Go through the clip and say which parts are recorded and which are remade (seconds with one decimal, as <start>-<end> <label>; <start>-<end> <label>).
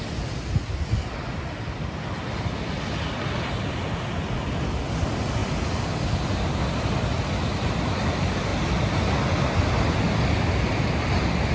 0.0-11.5 recorded